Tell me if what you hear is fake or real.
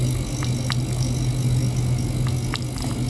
real